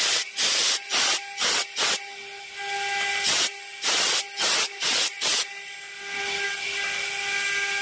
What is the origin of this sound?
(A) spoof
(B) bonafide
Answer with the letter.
B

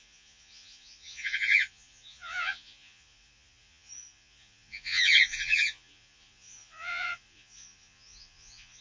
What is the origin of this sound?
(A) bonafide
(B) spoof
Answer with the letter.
B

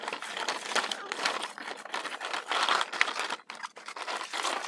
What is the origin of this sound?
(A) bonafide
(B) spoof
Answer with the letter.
A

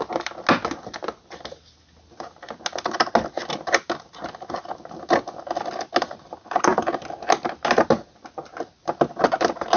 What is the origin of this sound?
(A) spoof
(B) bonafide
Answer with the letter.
B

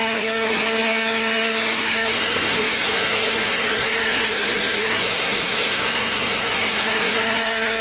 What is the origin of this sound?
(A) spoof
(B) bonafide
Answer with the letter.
A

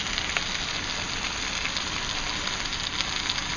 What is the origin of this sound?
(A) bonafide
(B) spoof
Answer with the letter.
A